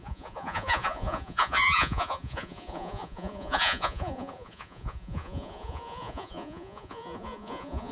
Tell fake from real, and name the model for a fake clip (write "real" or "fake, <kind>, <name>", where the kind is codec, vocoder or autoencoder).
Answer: fake, vocoder, Vocos